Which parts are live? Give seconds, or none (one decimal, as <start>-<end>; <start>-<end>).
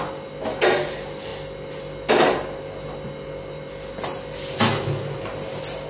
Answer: 0.0-5.9